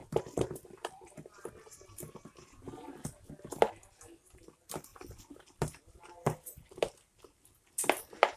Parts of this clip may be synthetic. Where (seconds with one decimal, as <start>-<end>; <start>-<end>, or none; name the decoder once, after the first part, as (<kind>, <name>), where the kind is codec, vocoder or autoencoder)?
none